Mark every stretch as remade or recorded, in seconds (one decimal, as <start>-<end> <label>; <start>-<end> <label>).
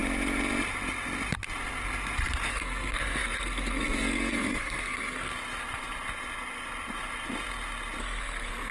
0.0-2.5 recorded; 2.5-5.3 remade; 5.3-8.0 recorded; 8.0-8.7 remade